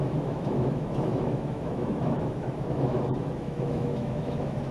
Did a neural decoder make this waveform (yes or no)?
yes